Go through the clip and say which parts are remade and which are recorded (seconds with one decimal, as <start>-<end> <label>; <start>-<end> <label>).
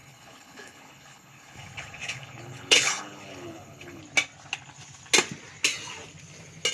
0.0-4.0 remade; 4.0-6.7 recorded